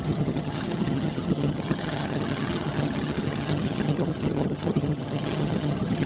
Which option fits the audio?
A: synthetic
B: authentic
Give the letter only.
A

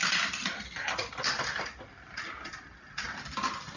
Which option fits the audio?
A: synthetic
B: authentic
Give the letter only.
B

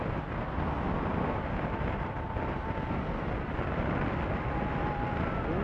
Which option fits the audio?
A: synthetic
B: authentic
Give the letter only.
B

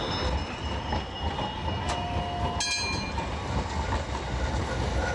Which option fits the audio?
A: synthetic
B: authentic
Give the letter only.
B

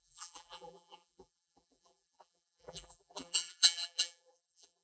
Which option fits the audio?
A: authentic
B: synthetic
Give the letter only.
B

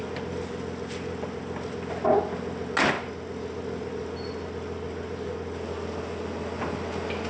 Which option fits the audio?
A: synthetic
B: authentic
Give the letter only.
B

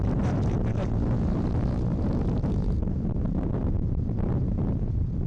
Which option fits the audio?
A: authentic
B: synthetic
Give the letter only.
B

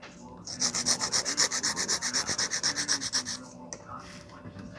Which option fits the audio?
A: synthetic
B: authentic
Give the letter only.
B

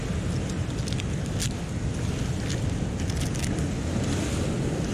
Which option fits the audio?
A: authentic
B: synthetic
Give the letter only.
A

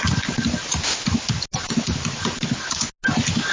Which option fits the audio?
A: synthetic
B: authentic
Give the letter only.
B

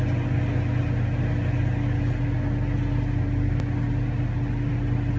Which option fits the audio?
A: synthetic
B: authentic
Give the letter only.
B